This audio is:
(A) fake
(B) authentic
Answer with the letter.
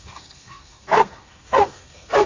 A